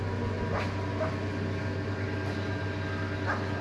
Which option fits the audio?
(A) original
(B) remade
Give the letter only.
A